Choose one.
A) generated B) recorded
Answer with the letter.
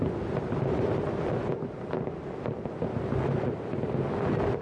B